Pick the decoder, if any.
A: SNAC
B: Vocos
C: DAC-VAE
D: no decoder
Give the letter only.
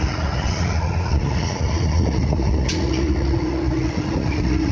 B